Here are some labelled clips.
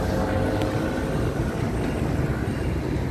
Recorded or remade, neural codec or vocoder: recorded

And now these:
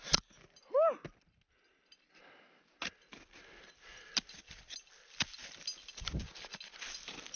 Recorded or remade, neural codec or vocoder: recorded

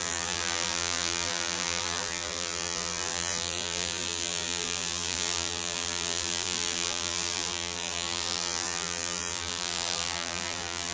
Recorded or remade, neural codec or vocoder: remade, vocoder, BigVGAN v2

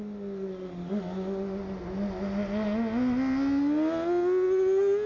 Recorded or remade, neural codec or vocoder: recorded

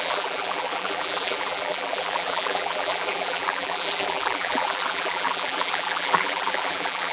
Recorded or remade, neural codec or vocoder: remade, vocoder, BigVGAN v2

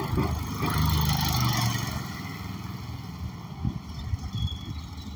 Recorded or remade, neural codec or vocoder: recorded